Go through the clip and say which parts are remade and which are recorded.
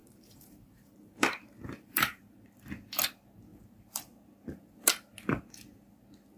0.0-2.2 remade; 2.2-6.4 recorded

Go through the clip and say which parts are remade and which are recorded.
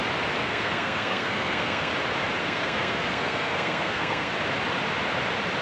0.0-0.4 recorded; 0.4-1.9 remade; 1.9-2.4 recorded; 2.4-4.3 remade; 4.3-5.6 recorded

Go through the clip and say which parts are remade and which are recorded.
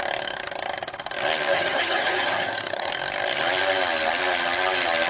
0.0-1.5 recorded; 1.5-2.9 remade; 2.9-5.1 recorded